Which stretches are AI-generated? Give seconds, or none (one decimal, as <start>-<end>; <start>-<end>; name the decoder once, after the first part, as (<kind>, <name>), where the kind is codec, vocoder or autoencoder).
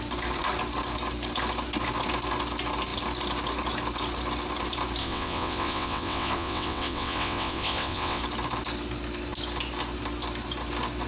5.0-8.2 (vocoder, WaveNeXt)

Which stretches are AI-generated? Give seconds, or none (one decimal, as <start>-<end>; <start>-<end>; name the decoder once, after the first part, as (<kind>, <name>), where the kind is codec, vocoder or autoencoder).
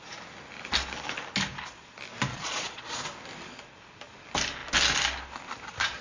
2.3-3.0 (vocoder, Vocos)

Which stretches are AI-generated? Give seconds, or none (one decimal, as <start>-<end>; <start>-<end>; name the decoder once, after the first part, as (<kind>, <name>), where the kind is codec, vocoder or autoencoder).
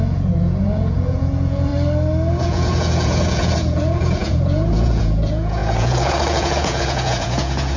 0.0-1.7 (vocoder, Vocos); 2.4-7.8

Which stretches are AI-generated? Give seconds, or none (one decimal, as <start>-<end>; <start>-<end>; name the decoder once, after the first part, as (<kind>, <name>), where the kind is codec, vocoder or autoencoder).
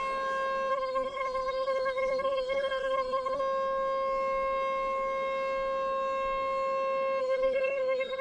0.7-3.4 (codec, SNAC); 7.2-8.2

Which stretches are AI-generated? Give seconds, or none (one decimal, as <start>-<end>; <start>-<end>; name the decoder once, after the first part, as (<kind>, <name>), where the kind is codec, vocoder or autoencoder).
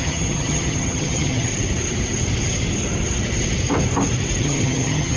0.0-1.5 (vocoder, HiFi-GAN); 4.4-5.2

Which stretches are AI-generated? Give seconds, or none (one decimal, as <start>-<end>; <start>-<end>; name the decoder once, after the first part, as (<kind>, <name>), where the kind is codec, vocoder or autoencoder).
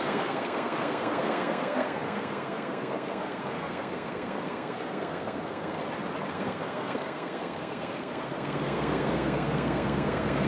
0.0-5.8 (codec, SNAC); 6.3-10.5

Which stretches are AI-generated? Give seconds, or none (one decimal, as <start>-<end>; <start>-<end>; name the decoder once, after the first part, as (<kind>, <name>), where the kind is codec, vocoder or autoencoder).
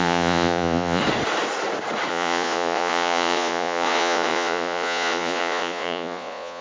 0.0-1.0 (vocoder, Vocos); 2.1-6.6